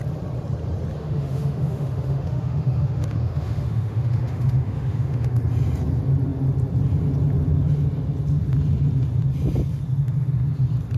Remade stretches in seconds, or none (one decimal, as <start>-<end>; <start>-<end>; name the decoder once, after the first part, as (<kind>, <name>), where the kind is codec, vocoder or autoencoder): 1.0-5.4 (autoencoder, DAC-VAE)